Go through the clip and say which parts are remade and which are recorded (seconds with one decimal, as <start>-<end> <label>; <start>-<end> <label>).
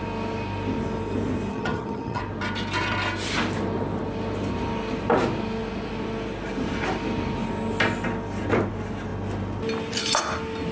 0.0-1.5 recorded; 1.5-2.2 remade; 2.2-10.7 recorded